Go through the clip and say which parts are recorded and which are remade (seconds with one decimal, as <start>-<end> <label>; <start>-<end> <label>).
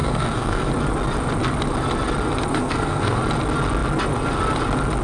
0.0-0.7 remade; 0.7-2.5 recorded; 2.5-3.2 remade; 3.2-5.0 recorded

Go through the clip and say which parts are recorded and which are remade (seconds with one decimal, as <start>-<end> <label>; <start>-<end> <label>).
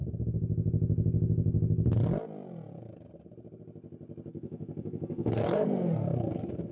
0.0-4.3 recorded; 4.3-6.7 remade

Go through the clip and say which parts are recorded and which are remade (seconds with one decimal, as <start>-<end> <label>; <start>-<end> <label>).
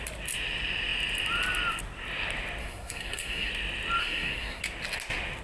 0.0-2.6 recorded; 2.6-3.5 remade; 3.5-4.0 recorded; 4.0-4.6 remade; 4.6-5.4 recorded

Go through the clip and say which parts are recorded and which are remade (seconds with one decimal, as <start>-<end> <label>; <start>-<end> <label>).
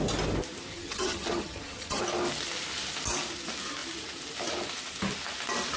0.0-0.7 recorded; 0.7-2.0 remade; 2.0-5.8 recorded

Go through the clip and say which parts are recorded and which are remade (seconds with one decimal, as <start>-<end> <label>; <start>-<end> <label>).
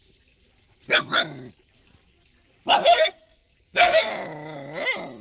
0.0-2.8 recorded; 2.8-4.1 remade; 4.1-5.2 recorded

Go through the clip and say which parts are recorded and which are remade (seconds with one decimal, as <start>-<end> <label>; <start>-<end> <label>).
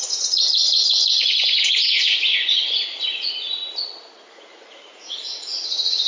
0.0-3.6 remade; 3.6-4.3 recorded; 4.3-6.1 remade